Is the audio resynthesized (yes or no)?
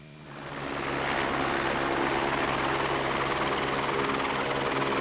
no